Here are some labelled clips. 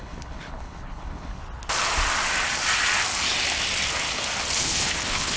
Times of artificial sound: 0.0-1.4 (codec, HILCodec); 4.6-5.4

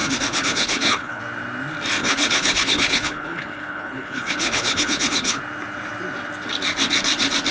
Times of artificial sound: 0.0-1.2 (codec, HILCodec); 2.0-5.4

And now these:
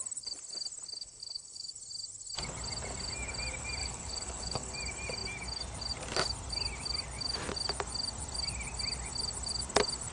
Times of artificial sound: 1.0-1.8 (codec, HILCodec); 3.8-4.7